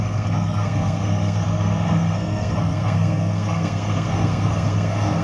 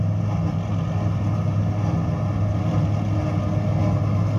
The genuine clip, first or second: second